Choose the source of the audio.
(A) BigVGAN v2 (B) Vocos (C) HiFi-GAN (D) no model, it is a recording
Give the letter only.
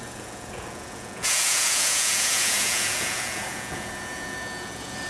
B